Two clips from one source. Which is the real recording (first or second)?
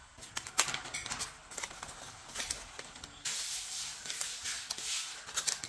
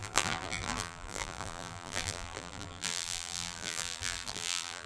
first